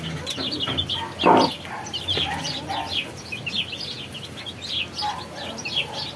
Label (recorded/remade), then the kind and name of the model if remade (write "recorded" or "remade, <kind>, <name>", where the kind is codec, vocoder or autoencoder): recorded